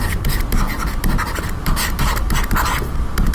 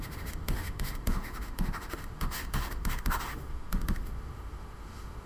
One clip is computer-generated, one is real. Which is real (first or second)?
first